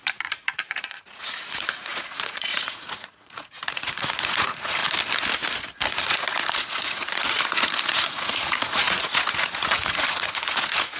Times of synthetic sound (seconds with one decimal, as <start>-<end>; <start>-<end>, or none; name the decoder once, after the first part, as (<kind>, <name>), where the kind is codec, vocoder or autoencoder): 0.0-4.8 (vocoder, Vocos); 5.9-11.0